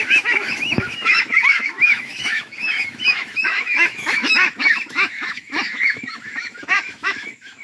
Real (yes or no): no